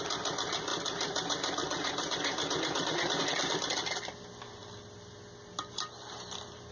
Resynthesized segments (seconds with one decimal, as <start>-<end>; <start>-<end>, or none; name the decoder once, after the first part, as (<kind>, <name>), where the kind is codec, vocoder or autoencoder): 0.7-3.2 (vocoder, BigVGAN v2)

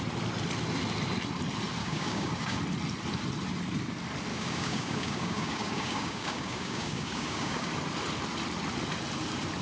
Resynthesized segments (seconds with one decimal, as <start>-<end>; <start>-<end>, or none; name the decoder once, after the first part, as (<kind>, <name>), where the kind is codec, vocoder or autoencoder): 1.8-2.6 (codec, DAC); 4.3-7.7

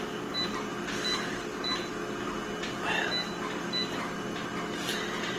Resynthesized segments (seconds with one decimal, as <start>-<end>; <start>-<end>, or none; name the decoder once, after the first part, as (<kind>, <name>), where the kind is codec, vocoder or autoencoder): none